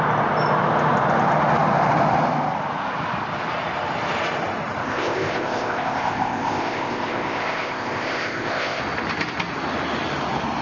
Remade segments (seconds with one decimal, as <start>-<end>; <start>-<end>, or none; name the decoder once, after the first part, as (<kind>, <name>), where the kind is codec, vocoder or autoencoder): 4.8-8.8 (codec, ZipCodec)